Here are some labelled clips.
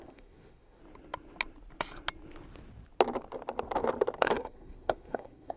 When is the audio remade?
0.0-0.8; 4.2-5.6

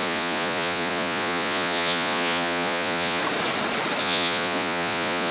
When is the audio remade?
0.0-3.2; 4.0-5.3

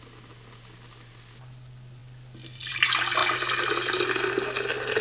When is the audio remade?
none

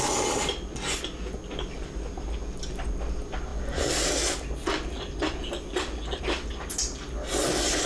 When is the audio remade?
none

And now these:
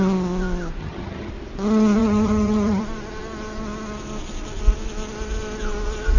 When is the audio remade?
0.8-1.3; 2.0-2.8